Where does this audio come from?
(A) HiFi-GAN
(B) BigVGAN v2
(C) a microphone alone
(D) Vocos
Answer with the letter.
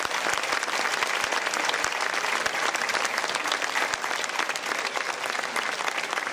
C